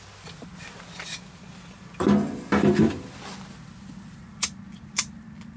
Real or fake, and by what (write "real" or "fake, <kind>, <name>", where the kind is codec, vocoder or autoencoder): real